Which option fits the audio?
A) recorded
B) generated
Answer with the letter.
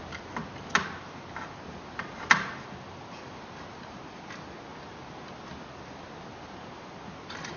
A